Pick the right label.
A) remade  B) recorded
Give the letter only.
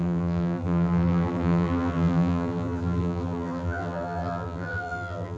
A